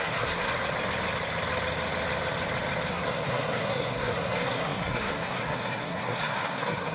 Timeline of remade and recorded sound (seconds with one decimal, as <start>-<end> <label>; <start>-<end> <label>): 0.0-0.5 remade; 0.5-2.9 recorded; 2.9-6.9 remade